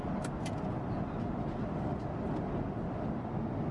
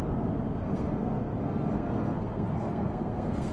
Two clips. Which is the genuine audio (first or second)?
first